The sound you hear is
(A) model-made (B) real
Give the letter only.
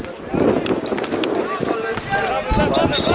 B